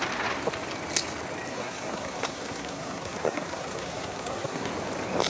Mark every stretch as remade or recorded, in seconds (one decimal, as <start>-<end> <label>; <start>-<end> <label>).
0.0-1.5 recorded; 1.5-4.7 remade; 4.7-5.3 recorded